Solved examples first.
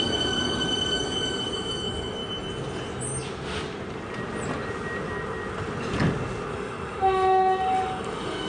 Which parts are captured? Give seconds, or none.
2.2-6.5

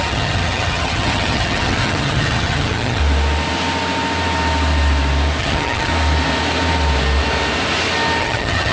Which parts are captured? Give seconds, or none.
3.0-5.4; 5.9-8.2

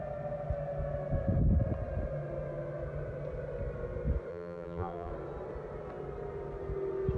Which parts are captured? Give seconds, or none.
0.0-4.3; 5.1-7.2

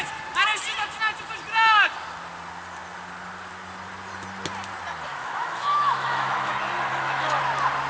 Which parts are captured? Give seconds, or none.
0.0-5.1; 6.5-6.9; 7.4-7.9

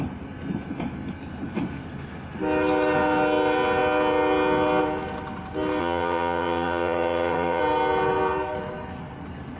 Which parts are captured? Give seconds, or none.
0.0-5.8; 7.6-9.6

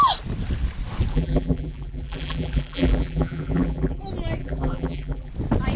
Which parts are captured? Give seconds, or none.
0.0-1.1; 4.0-4.4; 5.3-5.8

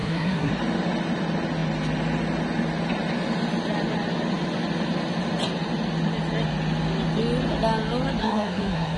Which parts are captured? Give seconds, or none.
0.5-8.2